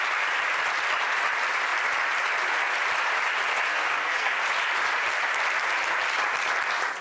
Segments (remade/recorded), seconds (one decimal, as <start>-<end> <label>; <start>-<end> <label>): 0.0-3.7 recorded; 3.7-4.4 remade; 4.4-7.0 recorded